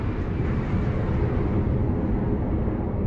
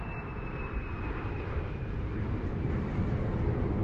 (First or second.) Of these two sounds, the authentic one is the first